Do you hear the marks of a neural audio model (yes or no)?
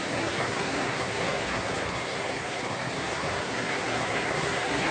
yes